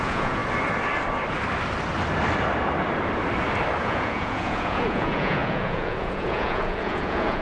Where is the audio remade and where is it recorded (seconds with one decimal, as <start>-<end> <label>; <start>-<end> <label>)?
0.0-0.4 remade; 0.4-3.8 recorded; 3.8-7.4 remade